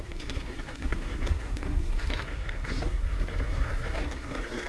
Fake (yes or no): yes